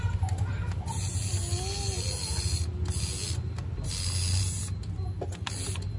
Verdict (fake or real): real